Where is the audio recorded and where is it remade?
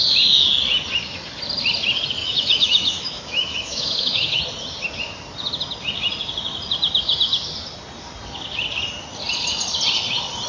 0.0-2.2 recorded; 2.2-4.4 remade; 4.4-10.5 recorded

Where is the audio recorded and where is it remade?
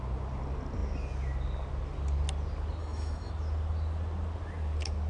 0.0-2.8 recorded; 2.8-3.3 remade; 3.3-5.1 recorded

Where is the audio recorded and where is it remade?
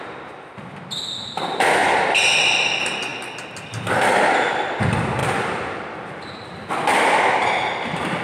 0.0-8.2 recorded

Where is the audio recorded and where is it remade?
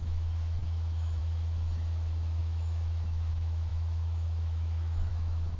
0.0-5.6 remade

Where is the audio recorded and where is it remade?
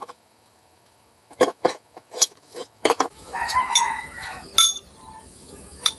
0.0-4.5 remade; 4.5-5.2 recorded; 5.2-6.0 remade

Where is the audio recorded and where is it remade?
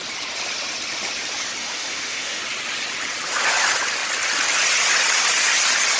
0.0-1.6 recorded; 1.6-2.4 remade; 2.4-6.0 recorded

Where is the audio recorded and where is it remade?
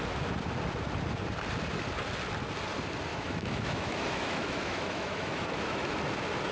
0.0-3.1 recorded; 3.1-6.0 remade; 6.0-6.5 recorded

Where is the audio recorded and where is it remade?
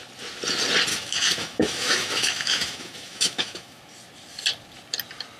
0.0-0.9 recorded; 0.9-3.8 remade; 3.8-5.4 recorded